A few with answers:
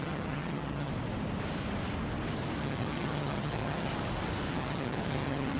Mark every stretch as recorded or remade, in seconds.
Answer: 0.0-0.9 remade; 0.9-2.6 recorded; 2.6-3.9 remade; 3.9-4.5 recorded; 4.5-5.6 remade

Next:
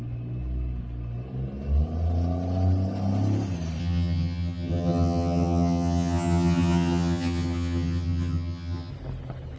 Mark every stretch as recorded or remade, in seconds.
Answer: 0.0-3.8 recorded; 3.8-8.9 remade; 8.9-9.6 recorded

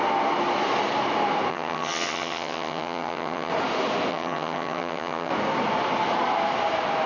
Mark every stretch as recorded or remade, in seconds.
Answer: 0.0-1.5 recorded; 1.5-3.5 remade; 3.5-4.1 recorded; 4.1-5.3 remade; 5.3-7.1 recorded

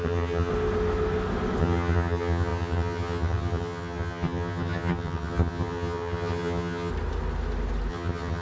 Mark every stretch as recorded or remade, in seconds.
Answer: 0.0-0.5 remade; 0.5-1.6 recorded; 1.6-6.9 remade; 6.9-7.9 recorded; 7.9-8.4 remade

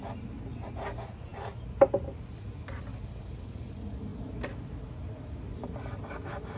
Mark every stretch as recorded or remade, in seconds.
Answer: 0.0-6.6 recorded

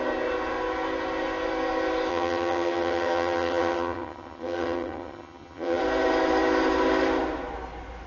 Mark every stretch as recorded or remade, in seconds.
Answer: 0.0-2.1 recorded; 2.1-5.8 remade; 5.8-8.1 recorded

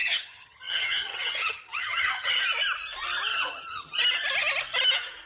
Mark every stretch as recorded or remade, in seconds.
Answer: 0.0-2.3 remade; 2.3-3.3 recorded; 3.3-4.0 remade; 4.0-5.3 recorded

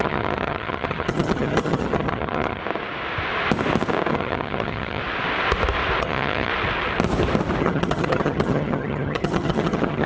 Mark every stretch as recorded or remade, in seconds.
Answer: 0.0-2.6 remade; 2.6-4.1 recorded; 4.1-5.0 remade; 5.0-6.0 recorded; 6.0-6.5 remade; 6.5-7.6 recorded; 7.6-10.1 remade